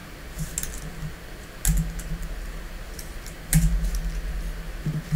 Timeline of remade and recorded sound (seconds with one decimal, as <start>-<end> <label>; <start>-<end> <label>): 0.0-5.2 recorded